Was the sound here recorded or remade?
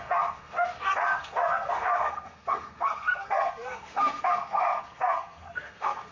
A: remade